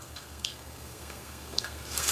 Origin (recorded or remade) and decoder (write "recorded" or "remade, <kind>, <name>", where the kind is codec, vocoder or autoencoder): remade, codec, SNAC